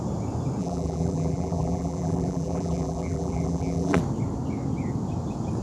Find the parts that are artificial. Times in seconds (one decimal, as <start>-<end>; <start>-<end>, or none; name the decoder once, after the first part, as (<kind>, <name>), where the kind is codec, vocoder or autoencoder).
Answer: 0.6-4.0 (vocoder, BigVGAN v2)